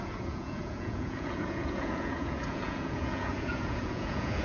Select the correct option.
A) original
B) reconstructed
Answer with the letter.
B